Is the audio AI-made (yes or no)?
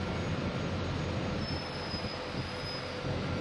no